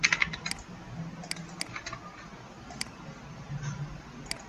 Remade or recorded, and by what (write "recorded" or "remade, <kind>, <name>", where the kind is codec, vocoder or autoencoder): recorded